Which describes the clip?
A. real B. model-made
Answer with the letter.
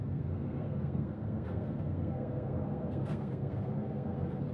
B